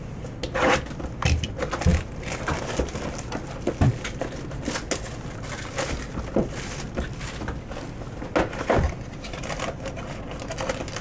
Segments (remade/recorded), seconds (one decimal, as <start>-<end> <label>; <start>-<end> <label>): 0.0-11.0 recorded